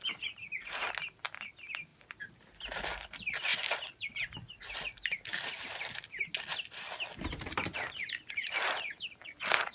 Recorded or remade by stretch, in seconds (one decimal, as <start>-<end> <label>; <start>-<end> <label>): 0.0-9.7 recorded